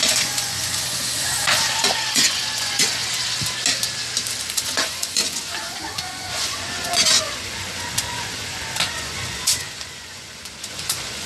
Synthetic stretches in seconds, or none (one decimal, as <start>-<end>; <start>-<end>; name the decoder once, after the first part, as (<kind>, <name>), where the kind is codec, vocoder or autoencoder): 0.0-3.0 (vocoder, Vocos); 4.5-11.3